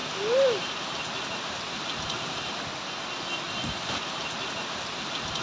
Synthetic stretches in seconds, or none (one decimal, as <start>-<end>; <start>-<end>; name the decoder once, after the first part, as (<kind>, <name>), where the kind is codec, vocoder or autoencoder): none